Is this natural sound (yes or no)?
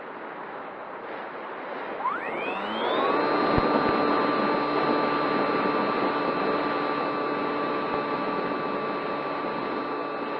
yes